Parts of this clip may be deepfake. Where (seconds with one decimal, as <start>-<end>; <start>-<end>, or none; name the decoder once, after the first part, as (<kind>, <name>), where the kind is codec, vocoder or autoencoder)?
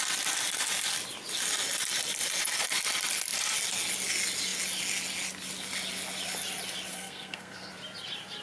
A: 6.9-7.7 (codec, SNAC)